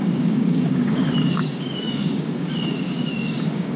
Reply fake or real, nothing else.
fake